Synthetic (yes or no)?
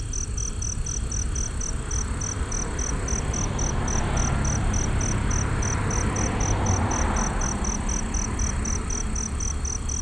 no